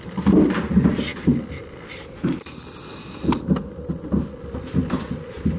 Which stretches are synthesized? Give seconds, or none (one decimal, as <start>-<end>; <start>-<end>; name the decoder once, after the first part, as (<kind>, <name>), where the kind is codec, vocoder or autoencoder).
none